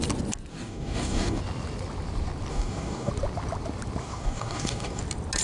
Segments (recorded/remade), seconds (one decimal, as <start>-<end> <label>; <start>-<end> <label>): 0.0-0.5 recorded; 0.5-1.4 remade; 1.4-2.5 recorded; 2.5-3.1 remade; 3.1-4.0 recorded; 4.0-5.0 remade; 5.0-5.4 recorded